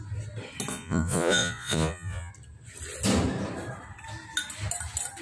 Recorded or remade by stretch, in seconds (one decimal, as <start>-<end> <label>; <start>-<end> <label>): 0.0-0.7 recorded; 0.7-2.3 remade; 2.3-5.2 recorded